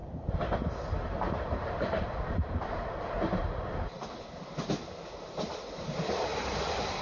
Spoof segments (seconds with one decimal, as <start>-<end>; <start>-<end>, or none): 0.0-4.1